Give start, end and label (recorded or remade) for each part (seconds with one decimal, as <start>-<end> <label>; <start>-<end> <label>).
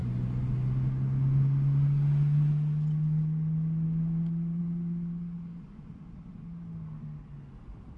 0.0-8.0 recorded